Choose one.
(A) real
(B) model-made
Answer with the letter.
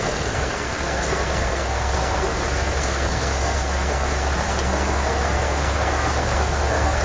B